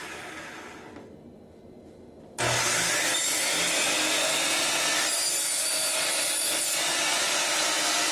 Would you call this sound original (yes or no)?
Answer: yes